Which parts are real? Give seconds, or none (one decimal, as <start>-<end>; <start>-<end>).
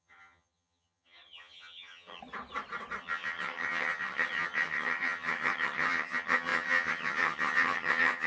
2.2-3.0